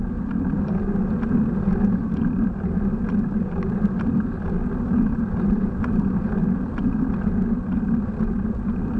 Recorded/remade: recorded